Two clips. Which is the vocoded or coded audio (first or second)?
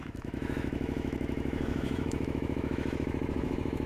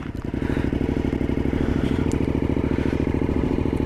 first